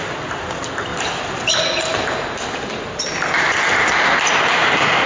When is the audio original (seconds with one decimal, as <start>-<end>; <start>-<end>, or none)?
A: 0.0-5.1